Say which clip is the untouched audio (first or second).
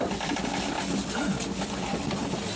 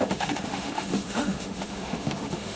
first